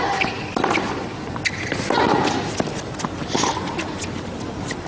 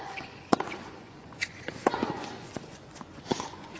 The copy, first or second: second